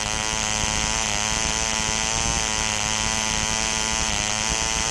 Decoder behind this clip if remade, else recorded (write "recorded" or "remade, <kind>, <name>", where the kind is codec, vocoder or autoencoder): recorded